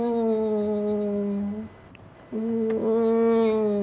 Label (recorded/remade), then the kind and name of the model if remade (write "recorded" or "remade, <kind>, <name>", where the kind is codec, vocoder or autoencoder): recorded